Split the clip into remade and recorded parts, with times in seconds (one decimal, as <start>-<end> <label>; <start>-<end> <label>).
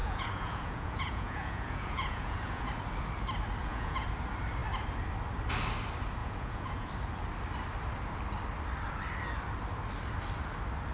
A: 0.0-2.7 remade; 2.7-3.6 recorded; 3.6-4.1 remade; 4.1-6.2 recorded; 6.2-6.9 remade; 6.9-10.9 recorded